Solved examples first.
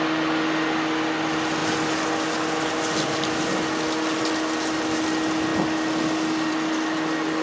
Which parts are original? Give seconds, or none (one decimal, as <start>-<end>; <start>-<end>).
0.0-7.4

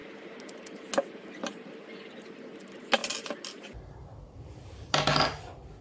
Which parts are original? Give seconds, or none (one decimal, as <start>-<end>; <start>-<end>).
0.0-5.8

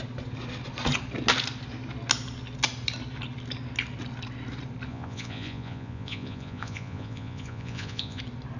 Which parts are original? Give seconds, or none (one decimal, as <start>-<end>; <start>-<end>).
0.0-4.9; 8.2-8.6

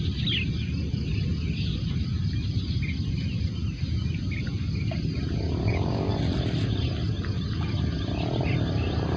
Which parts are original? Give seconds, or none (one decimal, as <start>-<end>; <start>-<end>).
0.0-5.6; 6.1-9.2